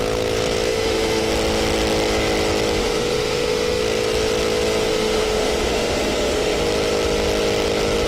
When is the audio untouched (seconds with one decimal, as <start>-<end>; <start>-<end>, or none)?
0.0-0.7; 1.3-2.8; 3.8-4.9; 6.6-8.1